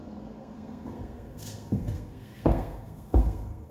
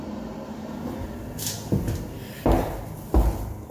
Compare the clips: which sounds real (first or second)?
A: second